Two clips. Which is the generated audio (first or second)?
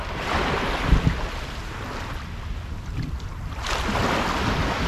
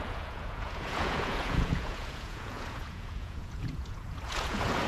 second